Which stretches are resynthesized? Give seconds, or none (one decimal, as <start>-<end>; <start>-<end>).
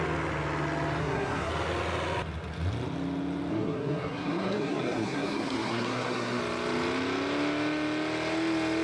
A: 1.0-1.5; 3.5-6.4